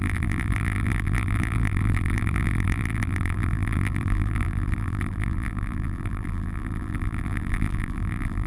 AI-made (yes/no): yes